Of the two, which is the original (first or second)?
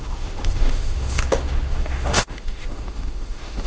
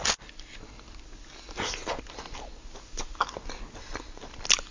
second